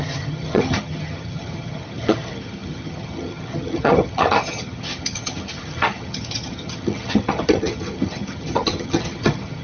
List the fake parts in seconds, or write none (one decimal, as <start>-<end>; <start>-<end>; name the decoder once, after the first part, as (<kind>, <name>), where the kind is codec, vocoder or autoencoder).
0.0-9.6 (vocoder, HiFi-GAN)

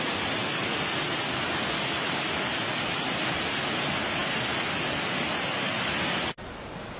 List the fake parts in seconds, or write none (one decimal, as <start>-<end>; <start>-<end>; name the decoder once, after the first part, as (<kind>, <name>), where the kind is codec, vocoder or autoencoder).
none

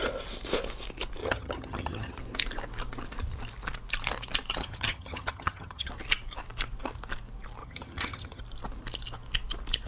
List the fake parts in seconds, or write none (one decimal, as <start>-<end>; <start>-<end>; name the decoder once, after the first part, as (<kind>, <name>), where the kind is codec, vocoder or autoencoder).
1.2-2.2 (vocoder, HiFi-GAN); 4.6-5.9; 7.6-8.4

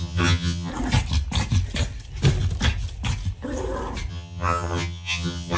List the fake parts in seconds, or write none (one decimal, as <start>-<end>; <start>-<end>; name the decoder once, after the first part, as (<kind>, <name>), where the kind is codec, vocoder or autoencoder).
0.0-0.7 (vocoder, HiFi-GAN); 4.1-5.6

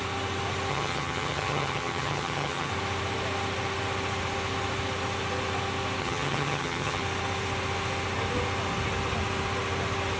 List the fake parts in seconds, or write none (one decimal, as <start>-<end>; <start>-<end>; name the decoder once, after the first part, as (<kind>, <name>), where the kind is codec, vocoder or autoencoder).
0.7-2.7 (vocoder, HiFi-GAN); 6.0-7.0